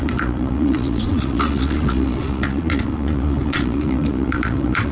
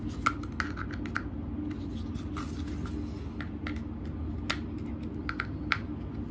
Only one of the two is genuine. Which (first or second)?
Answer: second